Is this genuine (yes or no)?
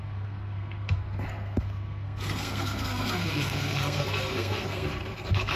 no